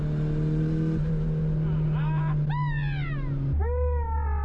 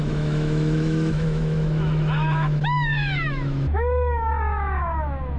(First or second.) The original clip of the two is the first